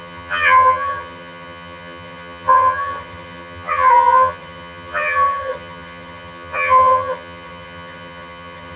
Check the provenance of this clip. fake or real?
fake